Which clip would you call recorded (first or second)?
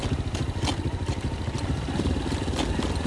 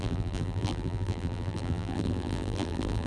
first